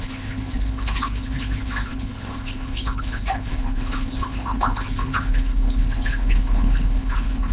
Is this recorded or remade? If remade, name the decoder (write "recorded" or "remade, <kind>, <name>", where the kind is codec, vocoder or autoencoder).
remade, codec, HILCodec